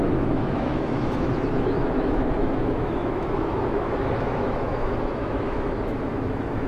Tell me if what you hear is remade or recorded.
remade